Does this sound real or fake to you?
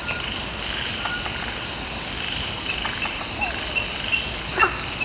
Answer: real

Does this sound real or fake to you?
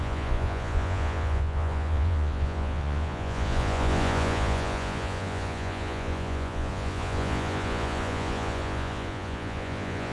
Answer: fake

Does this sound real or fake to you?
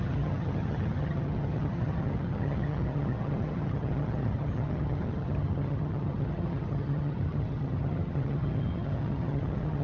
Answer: fake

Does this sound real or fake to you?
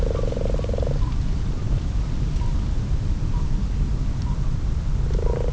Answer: real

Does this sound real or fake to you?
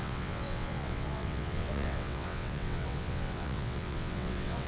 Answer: fake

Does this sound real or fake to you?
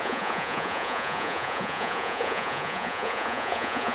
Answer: fake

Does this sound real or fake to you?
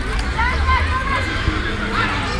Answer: real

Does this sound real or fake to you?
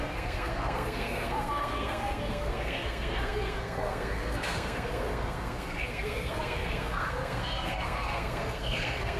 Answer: fake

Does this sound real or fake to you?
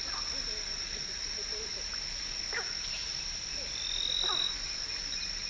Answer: real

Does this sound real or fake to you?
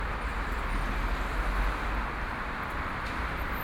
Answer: real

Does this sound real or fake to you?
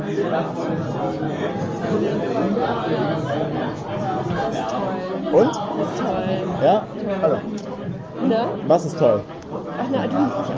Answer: real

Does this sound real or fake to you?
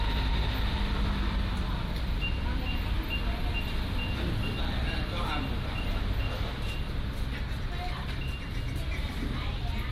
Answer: real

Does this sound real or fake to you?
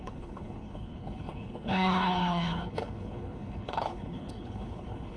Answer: fake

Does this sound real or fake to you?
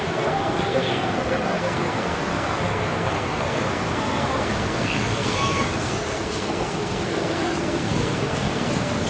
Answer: fake